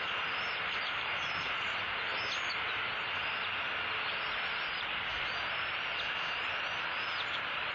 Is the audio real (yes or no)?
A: yes